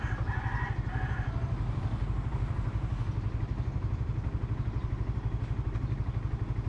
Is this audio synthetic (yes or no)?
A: no